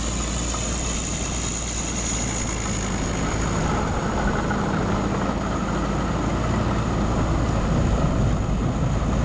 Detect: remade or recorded recorded